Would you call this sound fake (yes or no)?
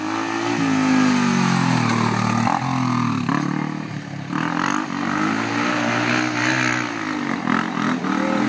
no